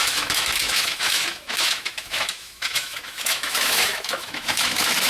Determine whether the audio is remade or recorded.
remade